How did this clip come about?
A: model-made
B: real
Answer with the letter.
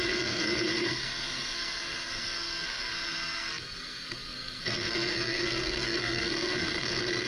A